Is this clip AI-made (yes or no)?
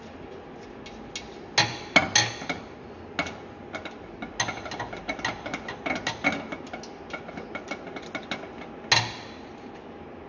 no